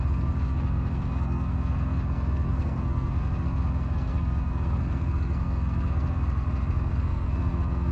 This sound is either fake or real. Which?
fake